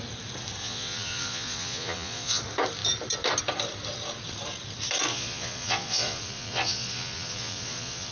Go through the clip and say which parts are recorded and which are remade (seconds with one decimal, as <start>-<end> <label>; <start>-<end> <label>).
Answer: 0.0-0.6 recorded; 0.6-2.4 remade; 2.4-5.1 recorded; 5.1-8.1 remade